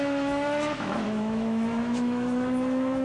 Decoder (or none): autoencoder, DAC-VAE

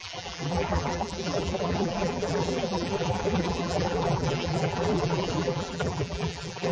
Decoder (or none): vocoder, BigVGAN v2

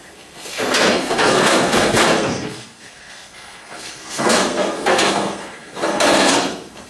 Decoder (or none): codec, SNAC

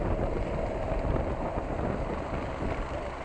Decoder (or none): none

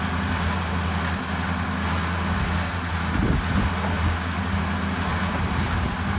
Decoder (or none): none